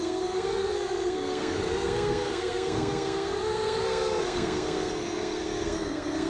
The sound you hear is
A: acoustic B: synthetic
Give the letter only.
B